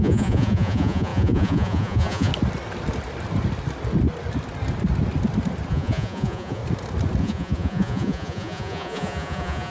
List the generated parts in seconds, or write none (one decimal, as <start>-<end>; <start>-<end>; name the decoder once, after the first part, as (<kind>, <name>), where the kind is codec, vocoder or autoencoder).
0.0-2.3 (vocoder, Vocos); 5.7-6.6; 7.2-9.7